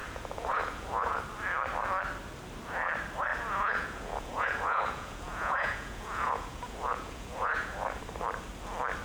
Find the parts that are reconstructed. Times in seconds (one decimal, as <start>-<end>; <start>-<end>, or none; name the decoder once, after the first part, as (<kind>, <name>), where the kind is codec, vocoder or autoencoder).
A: 0.0-1.2 (vocoder, Vocos); 3.3-8.0